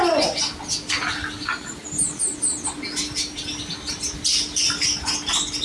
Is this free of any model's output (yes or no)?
yes